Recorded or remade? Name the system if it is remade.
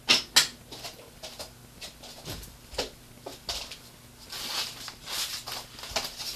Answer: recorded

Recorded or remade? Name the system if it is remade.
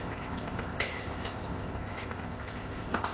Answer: remade, codec, ZipCodec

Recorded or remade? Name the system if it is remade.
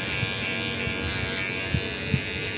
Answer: recorded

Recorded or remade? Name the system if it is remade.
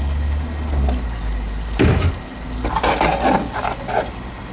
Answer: recorded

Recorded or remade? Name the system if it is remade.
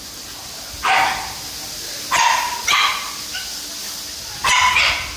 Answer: recorded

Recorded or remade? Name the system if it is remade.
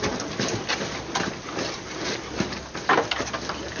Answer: recorded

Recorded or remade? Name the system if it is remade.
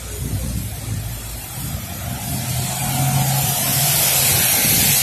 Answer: recorded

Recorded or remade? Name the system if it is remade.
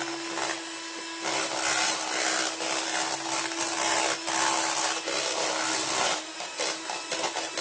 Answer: recorded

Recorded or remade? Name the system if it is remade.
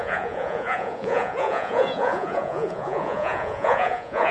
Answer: remade, vocoder, Vocos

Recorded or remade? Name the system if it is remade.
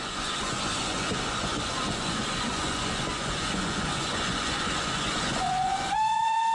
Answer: remade, vocoder, Vocos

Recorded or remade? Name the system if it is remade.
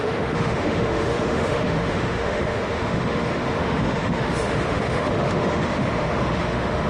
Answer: remade, autoencoder, DAC-VAE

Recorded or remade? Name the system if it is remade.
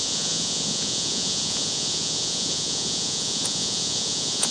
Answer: remade, vocoder, Vocos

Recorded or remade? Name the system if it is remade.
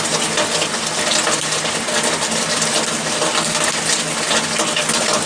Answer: recorded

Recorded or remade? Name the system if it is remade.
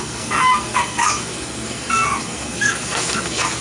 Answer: remade, codec, SNAC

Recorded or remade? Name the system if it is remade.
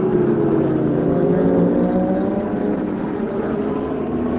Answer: recorded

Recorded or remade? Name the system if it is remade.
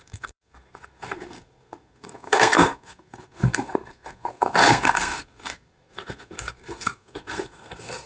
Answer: remade, codec, SNAC